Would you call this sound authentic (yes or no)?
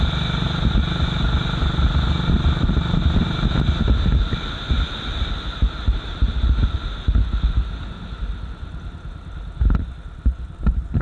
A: yes